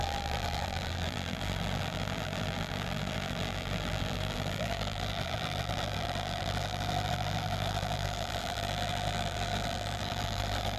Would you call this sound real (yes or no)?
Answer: no